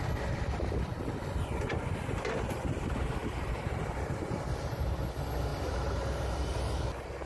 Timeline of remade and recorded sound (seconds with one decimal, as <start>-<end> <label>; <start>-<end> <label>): 0.0-3.2 recorded; 3.2-4.8 remade; 4.8-5.5 recorded; 5.5-6.6 remade; 6.6-7.3 recorded